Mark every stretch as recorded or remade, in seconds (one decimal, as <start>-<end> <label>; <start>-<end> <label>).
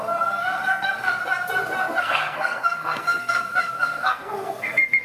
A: 0.0-1.2 remade; 1.2-2.0 recorded; 2.0-5.0 remade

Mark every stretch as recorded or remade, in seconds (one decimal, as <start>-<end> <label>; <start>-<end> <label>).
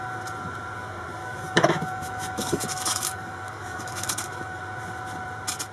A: 0.0-1.2 recorded; 1.2-4.6 remade; 4.6-5.7 recorded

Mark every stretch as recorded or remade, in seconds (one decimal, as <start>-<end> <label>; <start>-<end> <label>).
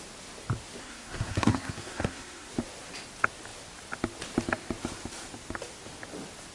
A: 0.0-0.8 recorded; 0.8-2.5 remade; 2.5-6.5 recorded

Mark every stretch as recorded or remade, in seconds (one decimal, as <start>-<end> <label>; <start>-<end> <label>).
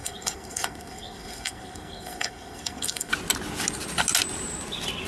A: 0.0-3.1 remade; 3.1-5.1 recorded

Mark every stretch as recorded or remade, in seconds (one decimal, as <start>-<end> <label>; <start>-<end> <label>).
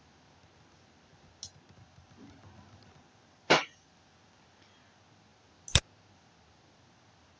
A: 0.0-7.4 recorded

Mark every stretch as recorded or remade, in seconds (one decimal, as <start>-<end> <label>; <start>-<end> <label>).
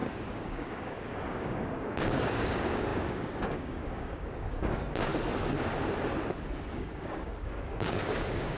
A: 0.0-5.1 remade; 5.1-6.7 recorded; 6.7-8.6 remade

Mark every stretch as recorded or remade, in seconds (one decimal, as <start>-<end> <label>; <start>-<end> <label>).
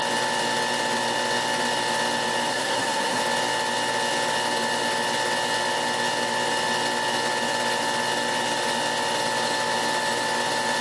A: 0.0-2.5 recorded; 2.5-3.2 remade; 3.2-10.8 recorded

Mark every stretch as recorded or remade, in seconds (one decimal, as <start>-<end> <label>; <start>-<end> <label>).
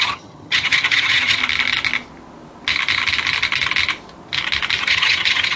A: 0.0-1.4 remade; 1.4-4.8 recorded; 4.8-5.6 remade